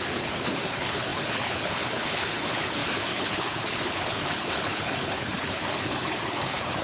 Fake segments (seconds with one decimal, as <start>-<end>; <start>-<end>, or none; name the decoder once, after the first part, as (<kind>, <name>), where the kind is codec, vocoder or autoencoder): 0.0-6.8 (codec, HILCodec)